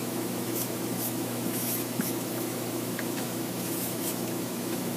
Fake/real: fake